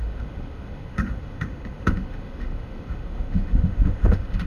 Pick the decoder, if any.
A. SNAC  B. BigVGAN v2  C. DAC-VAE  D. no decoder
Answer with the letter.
C